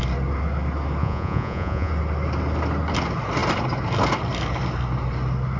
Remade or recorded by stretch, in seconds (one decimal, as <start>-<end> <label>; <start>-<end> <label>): 0.0-1.0 recorded; 1.0-1.9 remade; 1.9-5.6 recorded